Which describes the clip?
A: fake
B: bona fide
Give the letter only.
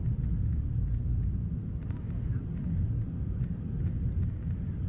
B